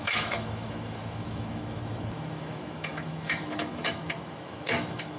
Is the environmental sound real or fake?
fake